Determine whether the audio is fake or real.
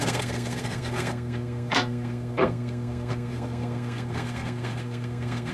fake